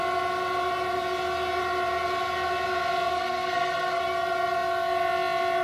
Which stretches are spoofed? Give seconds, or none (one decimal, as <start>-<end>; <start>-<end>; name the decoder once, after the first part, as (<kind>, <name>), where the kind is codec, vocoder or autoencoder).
3.1-4.0 (codec, SNAC)